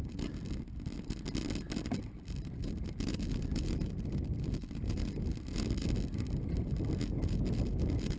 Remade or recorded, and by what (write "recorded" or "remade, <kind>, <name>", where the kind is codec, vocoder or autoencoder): recorded